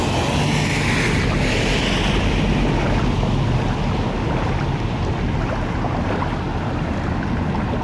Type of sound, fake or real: real